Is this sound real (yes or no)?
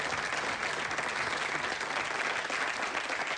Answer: yes